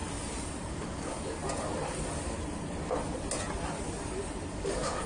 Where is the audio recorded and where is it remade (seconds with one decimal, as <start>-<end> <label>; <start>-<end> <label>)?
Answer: 0.0-0.7 recorded; 0.7-1.4 remade; 1.4-4.5 recorded; 4.5-5.1 remade